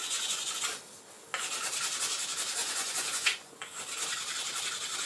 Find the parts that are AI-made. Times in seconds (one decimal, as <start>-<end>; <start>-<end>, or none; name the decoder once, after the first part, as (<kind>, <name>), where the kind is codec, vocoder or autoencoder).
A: 0.0-0.6 (vocoder, Vocos); 2.6-3.8